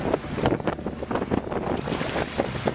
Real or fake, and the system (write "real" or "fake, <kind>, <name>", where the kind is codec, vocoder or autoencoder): real